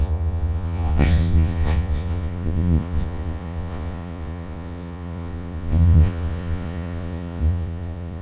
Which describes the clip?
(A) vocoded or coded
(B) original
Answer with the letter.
A